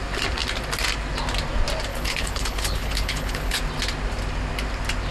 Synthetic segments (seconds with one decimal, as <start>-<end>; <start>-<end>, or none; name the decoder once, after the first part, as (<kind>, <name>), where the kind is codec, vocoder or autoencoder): 1.9-3.6 (codec, HILCodec)